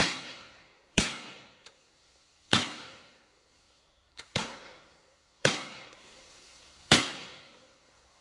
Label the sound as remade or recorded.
remade